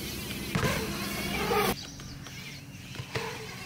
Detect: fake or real real